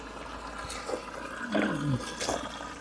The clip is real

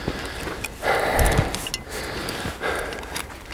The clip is real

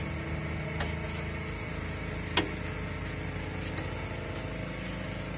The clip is real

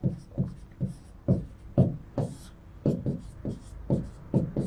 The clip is real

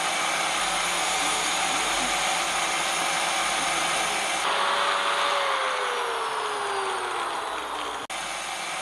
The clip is real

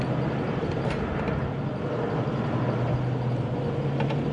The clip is real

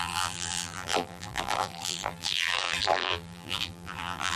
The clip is fake